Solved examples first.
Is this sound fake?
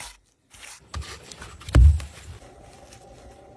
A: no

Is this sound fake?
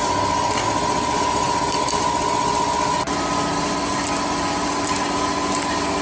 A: no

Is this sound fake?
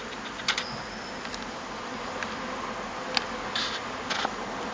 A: no